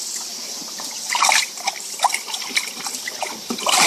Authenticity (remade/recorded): remade